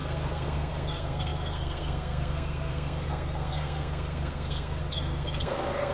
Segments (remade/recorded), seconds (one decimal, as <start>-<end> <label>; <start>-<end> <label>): 0.0-5.9 remade